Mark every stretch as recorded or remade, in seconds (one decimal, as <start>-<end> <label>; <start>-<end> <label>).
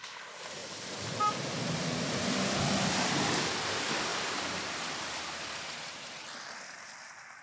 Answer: 0.0-0.6 recorded; 0.6-2.3 remade; 2.3-4.1 recorded; 4.1-6.1 remade; 6.1-7.4 recorded